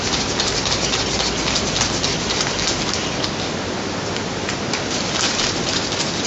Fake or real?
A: real